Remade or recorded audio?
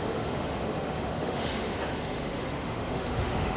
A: remade